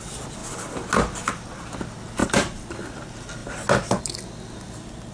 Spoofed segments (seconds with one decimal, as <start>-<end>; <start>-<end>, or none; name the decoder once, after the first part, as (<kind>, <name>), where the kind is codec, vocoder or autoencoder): 2.2-2.9 (vocoder, BigVGAN v2)